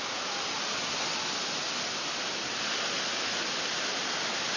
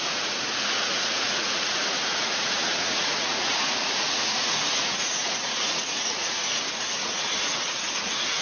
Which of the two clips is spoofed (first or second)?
second